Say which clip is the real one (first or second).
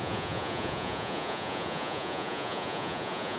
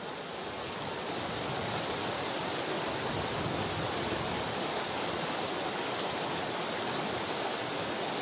second